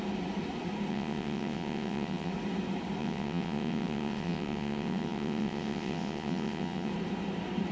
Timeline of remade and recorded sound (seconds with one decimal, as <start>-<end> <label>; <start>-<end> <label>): 0.0-0.9 recorded; 0.9-2.3 remade; 2.3-3.0 recorded; 3.0-6.9 remade; 6.9-7.7 recorded